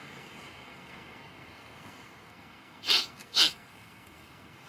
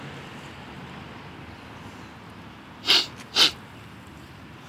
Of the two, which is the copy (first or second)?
first